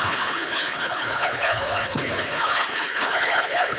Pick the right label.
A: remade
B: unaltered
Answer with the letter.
A